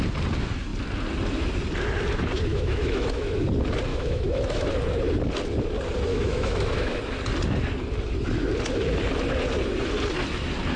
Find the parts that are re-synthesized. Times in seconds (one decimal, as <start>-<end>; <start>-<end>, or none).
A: 2.5-3.3; 3.9-4.7; 6.1-7.0

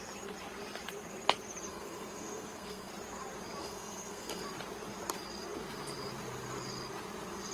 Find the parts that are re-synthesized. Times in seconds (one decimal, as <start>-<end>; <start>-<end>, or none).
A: 1.7-2.9; 3.6-4.4

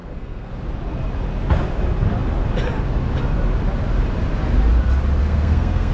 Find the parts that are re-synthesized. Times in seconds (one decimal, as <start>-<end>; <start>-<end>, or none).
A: 0.0-0.5; 5.2-5.9

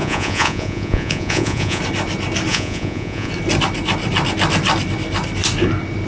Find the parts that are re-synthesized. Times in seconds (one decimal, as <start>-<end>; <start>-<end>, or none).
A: 0.0-1.8; 2.5-3.3